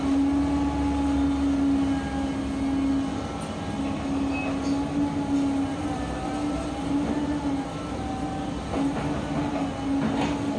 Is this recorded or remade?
recorded